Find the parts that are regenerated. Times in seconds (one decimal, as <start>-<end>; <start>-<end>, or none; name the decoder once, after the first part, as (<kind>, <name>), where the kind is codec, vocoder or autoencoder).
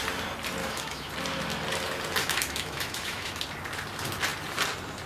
0.6-1.1 (autoencoder, DAC-VAE); 2.2-3.4